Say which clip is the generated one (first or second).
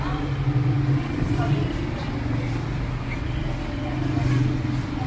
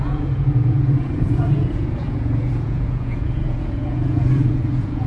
second